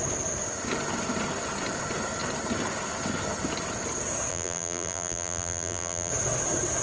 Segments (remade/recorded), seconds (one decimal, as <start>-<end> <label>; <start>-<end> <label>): 0.0-4.3 recorded; 4.3-6.1 remade; 6.1-6.8 recorded